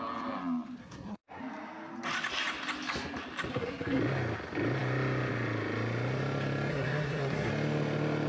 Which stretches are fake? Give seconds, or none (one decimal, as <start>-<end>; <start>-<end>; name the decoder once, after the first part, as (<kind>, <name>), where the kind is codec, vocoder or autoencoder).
0.8-1.4 (codec, SNAC); 3.5-4.0; 6.7-7.5